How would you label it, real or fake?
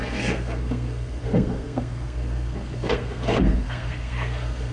fake